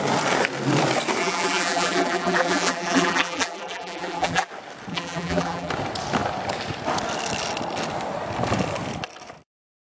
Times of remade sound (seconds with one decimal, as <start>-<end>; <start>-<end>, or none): 1.2-4.5; 4.9-5.7